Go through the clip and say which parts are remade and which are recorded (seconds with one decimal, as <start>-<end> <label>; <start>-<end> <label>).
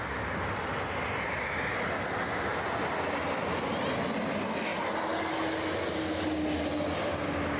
0.0-7.6 recorded